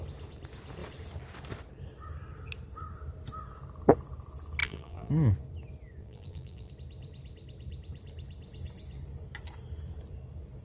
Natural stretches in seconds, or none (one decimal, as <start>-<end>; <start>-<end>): 0.0-4.6; 5.1-6.0; 6.7-10.6

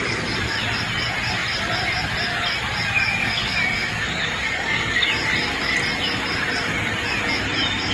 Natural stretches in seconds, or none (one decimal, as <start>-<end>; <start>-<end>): 0.0-3.2; 5.1-7.9

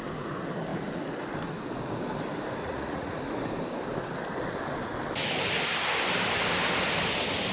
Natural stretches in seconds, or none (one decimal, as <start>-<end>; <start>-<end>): 0.0-2.6; 3.2-7.5

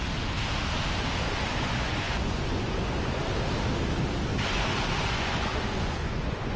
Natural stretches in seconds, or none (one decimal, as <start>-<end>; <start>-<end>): 0.0-1.2; 3.2-4.3

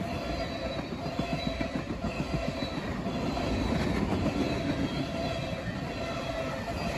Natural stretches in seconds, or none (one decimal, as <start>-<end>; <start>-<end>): 0.0-7.0

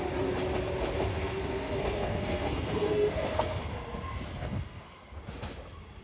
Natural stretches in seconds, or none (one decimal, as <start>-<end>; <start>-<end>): 0.0-1.1; 3.6-4.3; 5.2-6.0

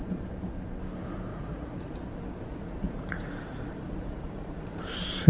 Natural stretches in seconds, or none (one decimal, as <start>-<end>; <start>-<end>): 0.0-1.3; 1.9-2.5; 4.8-5.3

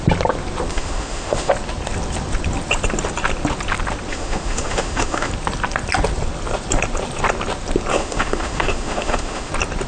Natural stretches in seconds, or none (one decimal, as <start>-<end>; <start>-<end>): 0.0-0.7; 1.5-4.1; 5.3-7.9; 9.5-9.9